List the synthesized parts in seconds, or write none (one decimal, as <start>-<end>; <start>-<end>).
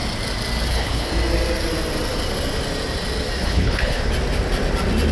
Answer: 0.7-1.1; 3.4-4.1